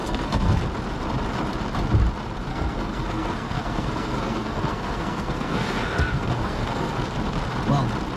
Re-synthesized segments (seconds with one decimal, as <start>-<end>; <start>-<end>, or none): 0.0-0.6; 2.5-7.0